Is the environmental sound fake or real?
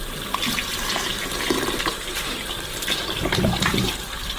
fake